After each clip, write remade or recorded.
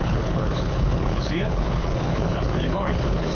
remade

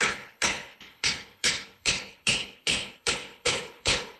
remade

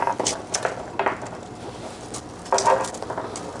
recorded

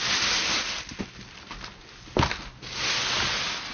recorded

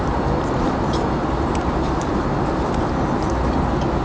recorded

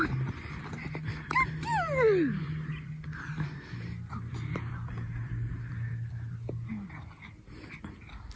recorded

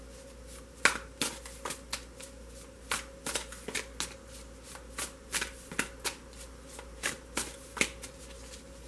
recorded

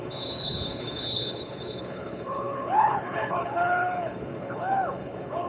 remade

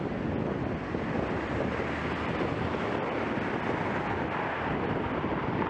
recorded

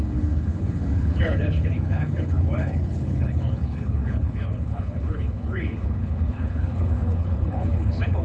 remade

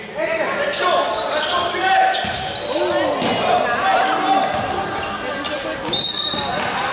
recorded